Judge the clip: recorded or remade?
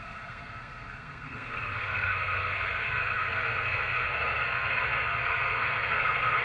remade